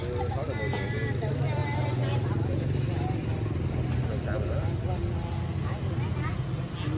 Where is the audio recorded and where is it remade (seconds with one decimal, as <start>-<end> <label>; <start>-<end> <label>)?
0.0-7.0 recorded